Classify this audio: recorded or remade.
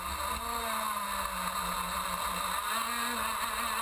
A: recorded